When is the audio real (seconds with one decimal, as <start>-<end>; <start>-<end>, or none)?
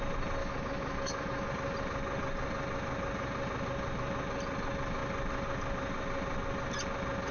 0.0-0.4; 1.5-7.3